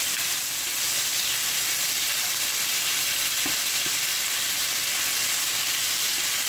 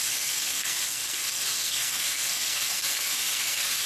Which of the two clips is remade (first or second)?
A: second